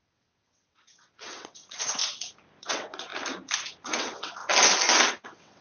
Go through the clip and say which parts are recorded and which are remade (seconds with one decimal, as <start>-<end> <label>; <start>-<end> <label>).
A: 0.0-2.0 remade; 2.0-2.6 recorded; 2.6-3.1 remade; 3.1-3.8 recorded; 3.8-4.4 remade; 4.4-5.1 recorded; 5.1-5.6 remade